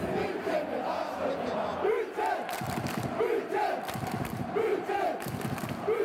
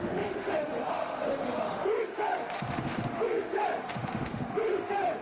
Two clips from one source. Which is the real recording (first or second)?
first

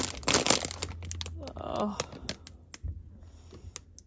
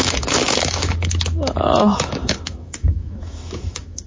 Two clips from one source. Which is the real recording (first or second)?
first